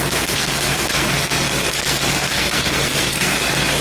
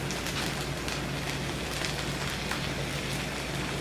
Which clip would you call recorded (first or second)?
second